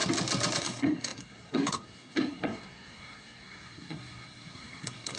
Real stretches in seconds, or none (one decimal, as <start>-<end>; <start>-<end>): 0.0-0.6